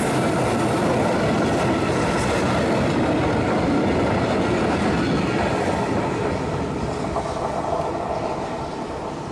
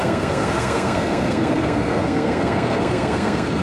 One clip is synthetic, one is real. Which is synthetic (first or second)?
second